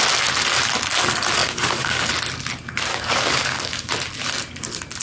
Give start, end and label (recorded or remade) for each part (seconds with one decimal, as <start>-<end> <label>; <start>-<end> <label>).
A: 0.0-1.4 recorded; 1.4-2.1 remade; 2.1-2.9 recorded; 2.9-3.9 remade; 3.9-5.0 recorded